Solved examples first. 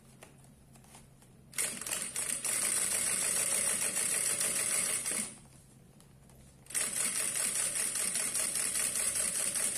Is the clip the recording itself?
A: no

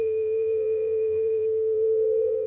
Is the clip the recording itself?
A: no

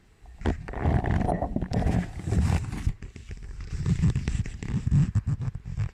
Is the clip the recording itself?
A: no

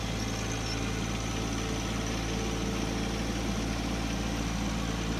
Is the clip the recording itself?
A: yes